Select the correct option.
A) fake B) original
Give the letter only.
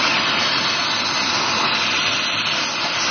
B